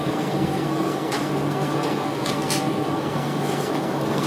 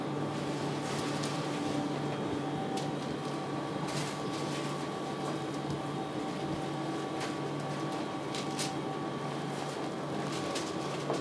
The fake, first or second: first